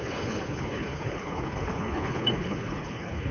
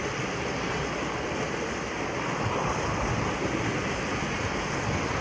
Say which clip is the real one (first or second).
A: second